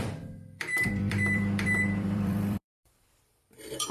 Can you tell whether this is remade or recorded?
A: remade